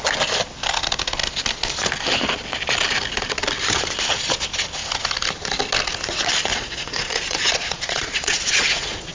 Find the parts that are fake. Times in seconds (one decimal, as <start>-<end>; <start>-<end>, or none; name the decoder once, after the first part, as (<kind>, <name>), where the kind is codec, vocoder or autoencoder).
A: 6.5-9.1 (vocoder, Vocos)

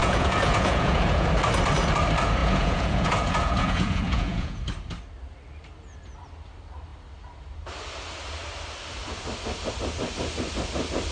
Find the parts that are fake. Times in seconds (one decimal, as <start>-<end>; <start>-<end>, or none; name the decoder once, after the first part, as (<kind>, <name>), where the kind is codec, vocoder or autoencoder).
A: 0.0-1.3 (vocoder, Vocos); 2.4-4.6

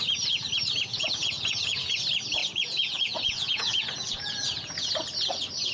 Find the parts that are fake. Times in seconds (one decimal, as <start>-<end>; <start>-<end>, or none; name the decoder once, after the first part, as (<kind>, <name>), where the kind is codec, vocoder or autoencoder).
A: 0.9-1.9 (vocoder, Vocos); 2.4-4.9

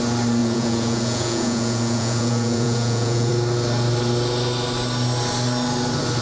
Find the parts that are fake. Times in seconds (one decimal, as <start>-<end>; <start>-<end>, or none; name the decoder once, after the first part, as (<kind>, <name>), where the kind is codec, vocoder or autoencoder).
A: 0.4-3.3 (vocoder, Vocos)

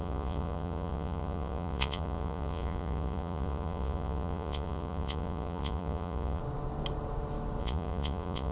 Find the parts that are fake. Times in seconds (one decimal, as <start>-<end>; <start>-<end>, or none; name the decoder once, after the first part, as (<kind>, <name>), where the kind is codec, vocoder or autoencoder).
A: 0.0-6.4 (vocoder, Vocos); 7.6-8.5

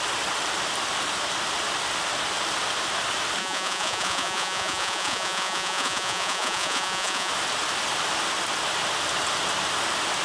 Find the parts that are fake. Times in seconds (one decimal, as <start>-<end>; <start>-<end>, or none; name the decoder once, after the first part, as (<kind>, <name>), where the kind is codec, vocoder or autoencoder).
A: 3.4-7.3 (vocoder, Vocos)

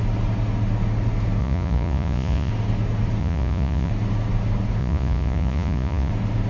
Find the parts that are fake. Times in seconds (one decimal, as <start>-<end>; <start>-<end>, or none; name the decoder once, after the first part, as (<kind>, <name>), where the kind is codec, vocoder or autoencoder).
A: 1.4-2.5 (vocoder, Vocos); 3.2-3.9; 4.8-6.1

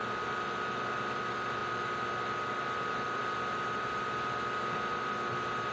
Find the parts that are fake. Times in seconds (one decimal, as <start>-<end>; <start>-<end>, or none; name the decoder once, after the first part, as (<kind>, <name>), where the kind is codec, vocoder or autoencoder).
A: none